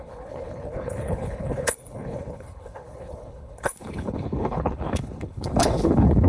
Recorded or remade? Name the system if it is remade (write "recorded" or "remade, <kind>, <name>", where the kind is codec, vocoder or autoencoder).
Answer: remade, codec, HILCodec